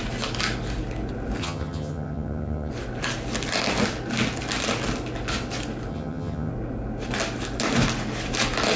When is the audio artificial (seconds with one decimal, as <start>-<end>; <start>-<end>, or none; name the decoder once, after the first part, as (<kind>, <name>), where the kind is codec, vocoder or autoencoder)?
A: 1.4-2.7 (vocoder, HiFi-GAN); 5.9-6.5